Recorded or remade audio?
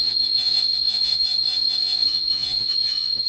remade